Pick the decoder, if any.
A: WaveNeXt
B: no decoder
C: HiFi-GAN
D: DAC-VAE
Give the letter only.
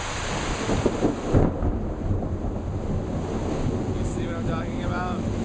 B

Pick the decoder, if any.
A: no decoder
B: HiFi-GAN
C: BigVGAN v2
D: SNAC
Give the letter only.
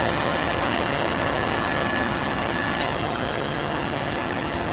B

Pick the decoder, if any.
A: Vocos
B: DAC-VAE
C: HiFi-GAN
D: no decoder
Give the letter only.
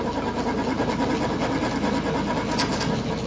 D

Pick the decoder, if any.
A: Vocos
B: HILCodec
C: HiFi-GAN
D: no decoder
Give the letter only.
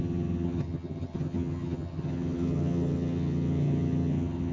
C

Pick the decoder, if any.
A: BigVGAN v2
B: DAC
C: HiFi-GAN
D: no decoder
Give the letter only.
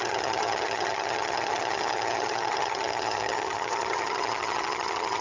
C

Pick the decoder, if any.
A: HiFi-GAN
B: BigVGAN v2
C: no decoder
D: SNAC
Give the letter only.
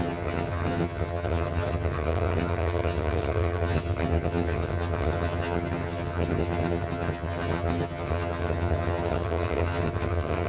A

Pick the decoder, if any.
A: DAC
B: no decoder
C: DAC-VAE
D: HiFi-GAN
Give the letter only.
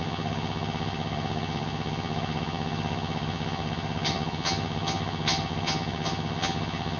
D